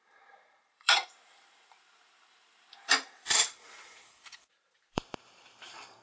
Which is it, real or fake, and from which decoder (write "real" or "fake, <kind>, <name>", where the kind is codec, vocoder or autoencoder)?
fake, vocoder, BigVGAN v2